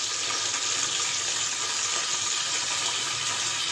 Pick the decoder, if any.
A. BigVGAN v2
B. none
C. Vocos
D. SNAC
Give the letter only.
B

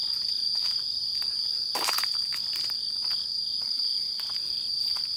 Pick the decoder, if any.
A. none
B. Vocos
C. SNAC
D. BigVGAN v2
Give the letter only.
A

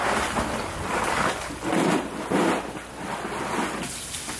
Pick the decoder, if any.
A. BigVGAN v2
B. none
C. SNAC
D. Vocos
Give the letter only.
B